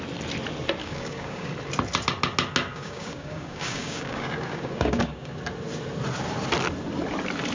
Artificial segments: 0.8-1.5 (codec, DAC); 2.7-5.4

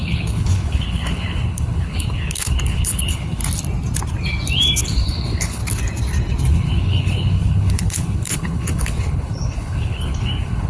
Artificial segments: 0.0-3.4 (codec, HILCodec); 4.8-5.6; 6.5-10.7

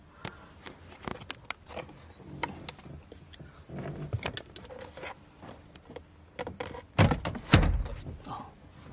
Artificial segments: none

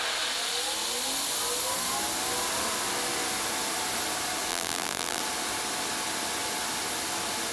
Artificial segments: 4.5-5.2 (vocoder, BigVGAN v2)

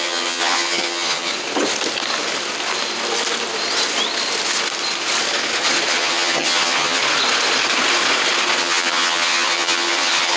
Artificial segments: 0.0-1.3 (vocoder, HiFi-GAN); 5.9-7.0; 8.6-10.4

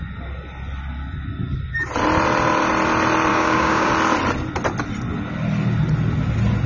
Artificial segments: 3.3-3.9 (codec, DAC)

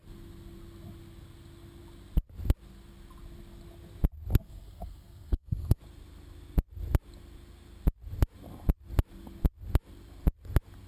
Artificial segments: 4.3-5.8 (codec, SNAC)